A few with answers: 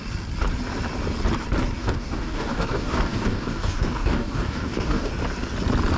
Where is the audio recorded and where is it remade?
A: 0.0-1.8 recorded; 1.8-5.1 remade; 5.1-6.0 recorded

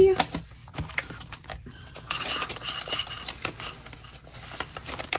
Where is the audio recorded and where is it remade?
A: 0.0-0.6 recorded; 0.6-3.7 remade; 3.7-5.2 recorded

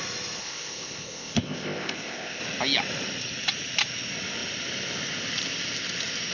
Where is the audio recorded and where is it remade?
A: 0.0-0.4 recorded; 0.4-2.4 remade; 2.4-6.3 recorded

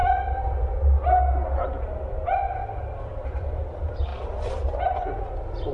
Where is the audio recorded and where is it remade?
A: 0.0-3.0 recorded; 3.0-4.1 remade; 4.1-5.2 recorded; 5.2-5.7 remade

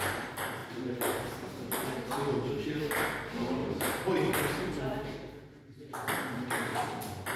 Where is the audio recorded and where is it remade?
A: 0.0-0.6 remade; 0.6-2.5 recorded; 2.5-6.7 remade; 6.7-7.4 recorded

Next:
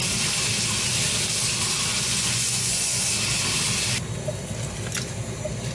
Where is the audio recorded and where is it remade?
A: 0.0-1.9 recorded; 1.9-3.1 remade; 3.1-5.7 recorded